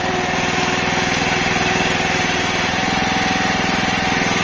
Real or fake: real